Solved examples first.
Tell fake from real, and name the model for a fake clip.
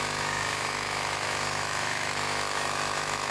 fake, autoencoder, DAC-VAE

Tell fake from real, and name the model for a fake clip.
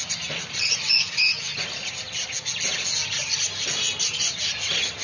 real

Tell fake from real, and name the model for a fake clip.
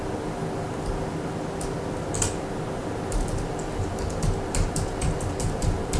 real